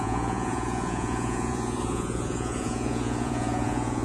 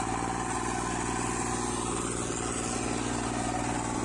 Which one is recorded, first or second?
second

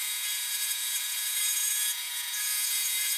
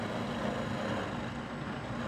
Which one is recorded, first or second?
second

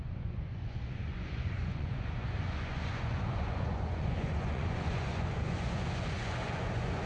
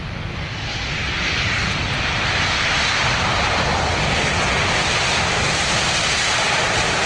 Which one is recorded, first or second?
second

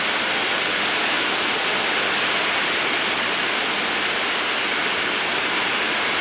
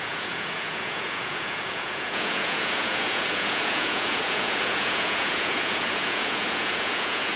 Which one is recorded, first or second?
first